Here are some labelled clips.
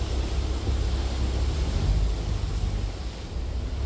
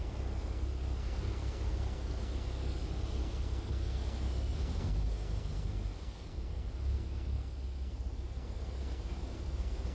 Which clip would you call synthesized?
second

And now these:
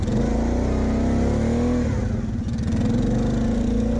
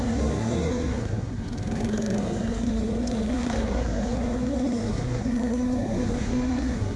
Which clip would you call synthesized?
second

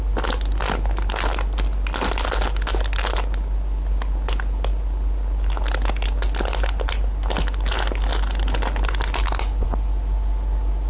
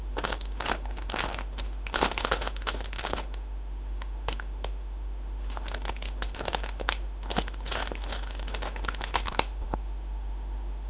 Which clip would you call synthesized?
second